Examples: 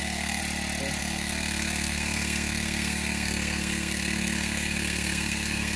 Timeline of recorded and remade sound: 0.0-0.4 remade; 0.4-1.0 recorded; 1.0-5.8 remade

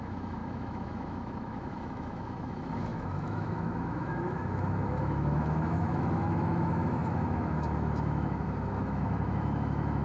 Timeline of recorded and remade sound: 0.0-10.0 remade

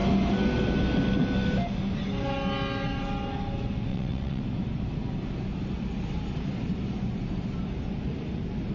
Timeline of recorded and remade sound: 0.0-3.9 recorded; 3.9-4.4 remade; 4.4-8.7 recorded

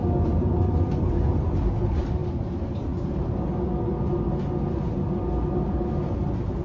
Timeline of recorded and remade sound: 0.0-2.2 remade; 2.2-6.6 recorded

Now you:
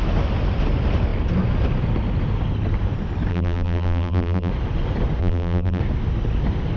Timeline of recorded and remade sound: 0.0-3.3 recorded; 3.3-4.5 remade; 4.5-5.2 recorded; 5.2-5.8 remade; 5.8-6.8 recorded

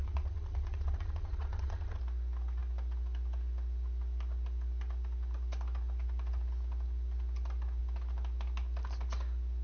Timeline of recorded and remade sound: 0.0-2.0 remade; 2.0-9.6 recorded

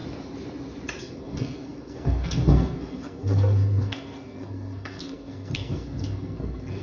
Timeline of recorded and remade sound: 0.0-1.0 recorded; 1.0-6.8 remade